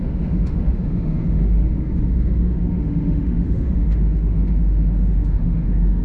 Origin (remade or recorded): remade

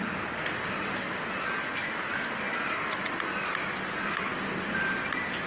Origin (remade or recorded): recorded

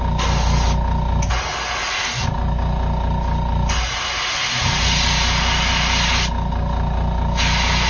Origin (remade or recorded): recorded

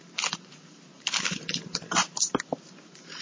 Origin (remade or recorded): remade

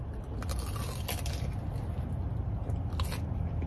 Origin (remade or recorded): recorded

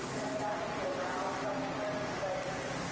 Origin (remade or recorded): recorded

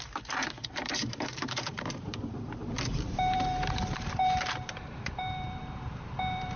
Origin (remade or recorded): remade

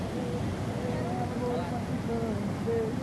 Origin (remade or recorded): recorded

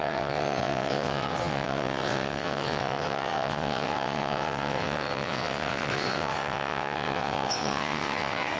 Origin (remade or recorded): remade